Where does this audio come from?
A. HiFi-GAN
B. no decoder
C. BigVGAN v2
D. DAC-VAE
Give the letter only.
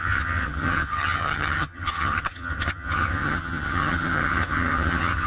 A